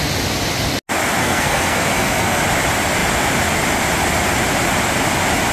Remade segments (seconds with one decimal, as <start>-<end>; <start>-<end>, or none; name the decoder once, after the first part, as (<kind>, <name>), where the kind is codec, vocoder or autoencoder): 1.2-2.4 (codec, SNAC)